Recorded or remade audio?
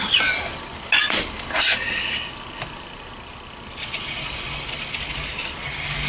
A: recorded